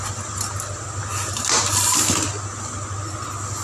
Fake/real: real